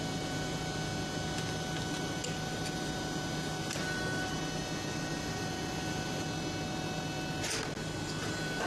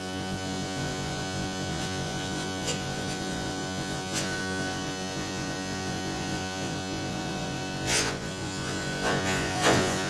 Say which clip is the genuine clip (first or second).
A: first